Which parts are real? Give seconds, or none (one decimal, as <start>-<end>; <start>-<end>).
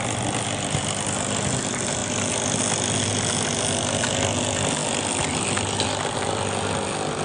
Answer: 0.0-7.2